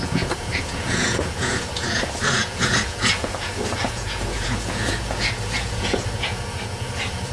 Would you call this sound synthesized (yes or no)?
yes